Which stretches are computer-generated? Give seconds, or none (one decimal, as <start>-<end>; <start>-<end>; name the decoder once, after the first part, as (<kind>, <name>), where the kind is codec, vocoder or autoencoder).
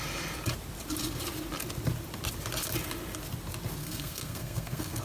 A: 3.8-5.0 (codec, SNAC)